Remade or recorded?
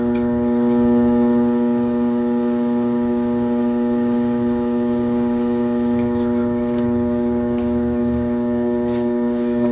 remade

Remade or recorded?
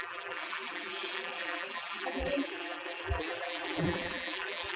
remade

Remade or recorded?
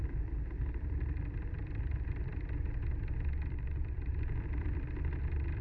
remade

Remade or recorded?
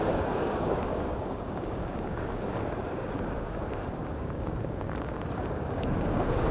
remade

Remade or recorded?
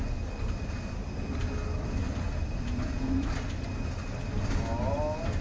recorded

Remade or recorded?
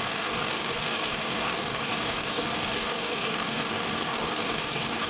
remade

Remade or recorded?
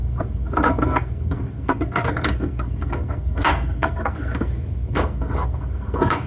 remade